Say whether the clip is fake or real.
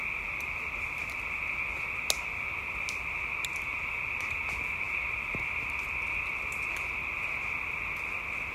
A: real